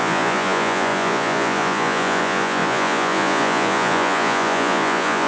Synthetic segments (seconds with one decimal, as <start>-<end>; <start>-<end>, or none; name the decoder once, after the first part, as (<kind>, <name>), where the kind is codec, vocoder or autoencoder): 0.0-5.3 (vocoder, Vocos)

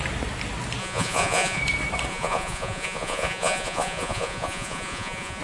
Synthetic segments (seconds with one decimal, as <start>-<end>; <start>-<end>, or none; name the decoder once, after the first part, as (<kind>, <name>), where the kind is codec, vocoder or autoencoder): 0.8-1.6 (vocoder, Vocos); 2.1-5.4

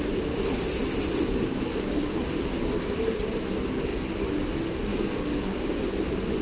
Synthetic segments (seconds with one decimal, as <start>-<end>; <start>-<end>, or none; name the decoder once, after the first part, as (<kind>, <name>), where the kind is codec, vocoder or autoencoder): 1.5-3.0 (codec, DAC); 4.9-5.8

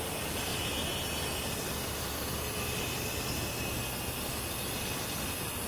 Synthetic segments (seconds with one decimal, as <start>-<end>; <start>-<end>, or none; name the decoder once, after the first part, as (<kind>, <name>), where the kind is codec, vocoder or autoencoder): none

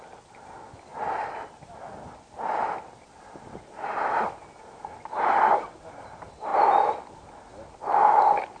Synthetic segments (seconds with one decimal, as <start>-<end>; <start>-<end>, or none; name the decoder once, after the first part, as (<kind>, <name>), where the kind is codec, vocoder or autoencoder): none

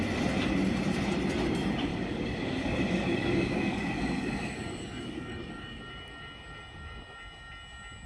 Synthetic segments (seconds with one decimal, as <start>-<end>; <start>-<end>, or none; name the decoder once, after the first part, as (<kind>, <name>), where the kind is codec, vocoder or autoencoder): 1.9-5.8 (codec, DAC)

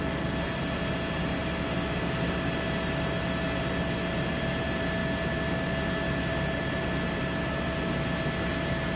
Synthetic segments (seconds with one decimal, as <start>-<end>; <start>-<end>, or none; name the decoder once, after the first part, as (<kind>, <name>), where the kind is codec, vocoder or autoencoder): none